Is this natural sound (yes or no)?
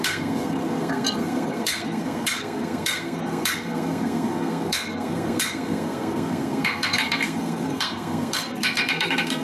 no